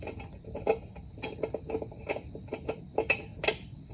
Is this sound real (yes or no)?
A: yes